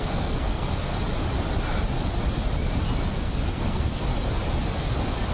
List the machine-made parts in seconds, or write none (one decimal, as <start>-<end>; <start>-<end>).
0.0-0.9; 3.1-4.1